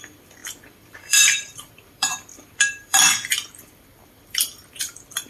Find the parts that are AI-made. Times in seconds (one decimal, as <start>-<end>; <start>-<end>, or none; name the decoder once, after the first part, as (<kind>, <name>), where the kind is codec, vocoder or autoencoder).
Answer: 0.0-5.3 (vocoder, BigVGAN v2)